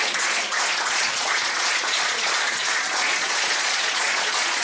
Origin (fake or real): fake